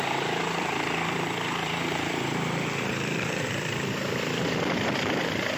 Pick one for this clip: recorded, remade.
remade